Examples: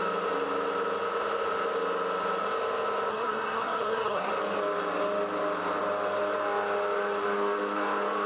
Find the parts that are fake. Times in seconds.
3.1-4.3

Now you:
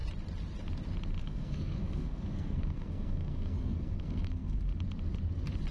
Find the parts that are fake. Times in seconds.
1.2-4.6

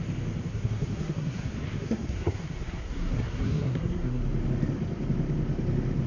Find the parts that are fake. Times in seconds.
0.5-4.2

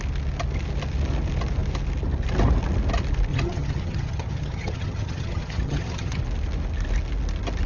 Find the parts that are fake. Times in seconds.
3.3-6.2

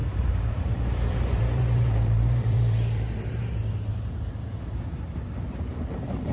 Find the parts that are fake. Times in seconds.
0.0-3.9; 4.4-6.3

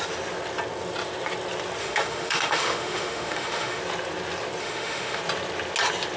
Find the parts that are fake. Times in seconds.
1.8-3.8; 4.6-5.2

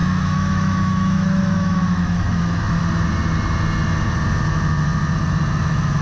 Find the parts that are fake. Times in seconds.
0.0-2.8; 5.6-6.0